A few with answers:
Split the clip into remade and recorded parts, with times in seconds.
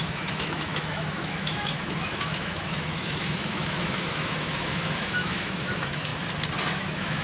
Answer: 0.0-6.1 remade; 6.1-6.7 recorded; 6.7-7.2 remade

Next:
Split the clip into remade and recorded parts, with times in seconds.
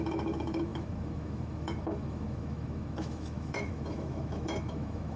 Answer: 0.0-5.2 remade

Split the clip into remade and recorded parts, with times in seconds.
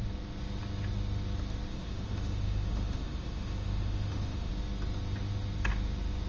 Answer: 0.0-1.7 recorded; 1.7-4.5 remade; 4.5-6.3 recorded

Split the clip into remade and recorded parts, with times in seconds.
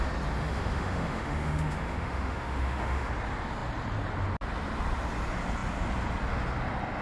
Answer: 0.0-0.4 recorded; 0.4-3.1 remade; 3.1-7.0 recorded